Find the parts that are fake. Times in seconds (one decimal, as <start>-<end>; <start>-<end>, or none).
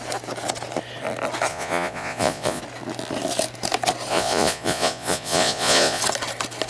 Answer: 1.5-2.6; 4.1-6.0